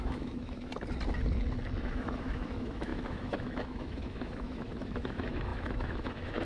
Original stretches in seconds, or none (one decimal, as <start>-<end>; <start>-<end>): 0.7-1.8